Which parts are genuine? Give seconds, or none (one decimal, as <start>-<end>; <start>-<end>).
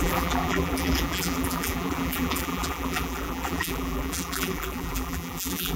none